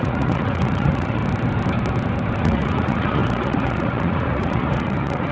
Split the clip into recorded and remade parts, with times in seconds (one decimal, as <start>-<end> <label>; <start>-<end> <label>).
0.0-1.2 remade; 1.2-2.4 recorded; 2.4-5.3 remade